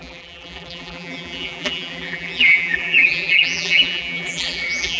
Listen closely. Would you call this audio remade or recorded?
remade